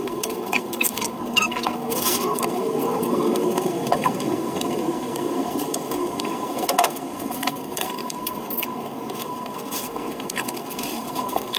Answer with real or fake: fake